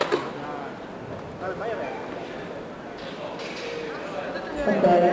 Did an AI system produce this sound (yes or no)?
no